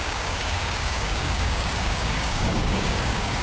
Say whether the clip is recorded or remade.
remade